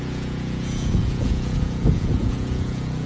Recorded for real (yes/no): no